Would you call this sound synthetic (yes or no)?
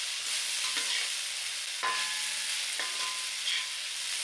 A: no